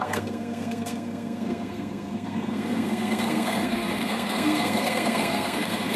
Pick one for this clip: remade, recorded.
remade